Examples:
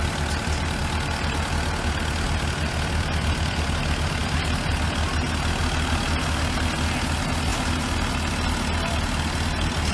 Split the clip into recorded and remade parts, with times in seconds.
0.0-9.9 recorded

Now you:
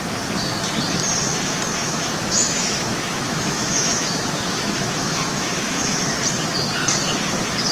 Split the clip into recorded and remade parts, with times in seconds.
0.0-1.8 recorded; 1.8-6.1 remade; 6.1-7.7 recorded

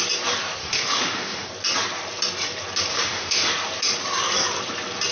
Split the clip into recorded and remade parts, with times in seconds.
0.0-0.6 recorded; 0.6-1.5 remade; 1.5-2.9 recorded; 2.9-3.5 remade; 3.5-5.1 recorded

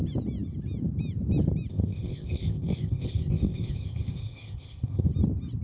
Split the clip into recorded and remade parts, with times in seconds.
0.0-1.7 recorded; 1.7-5.1 remade; 5.1-5.6 recorded

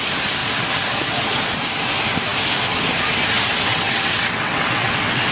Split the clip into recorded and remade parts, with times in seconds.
0.0-3.7 recorded; 3.7-5.3 remade

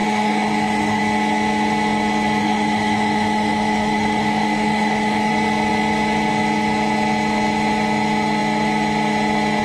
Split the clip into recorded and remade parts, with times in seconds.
0.0-1.0 remade; 1.0-2.4 recorded; 2.4-5.3 remade; 5.3-9.6 recorded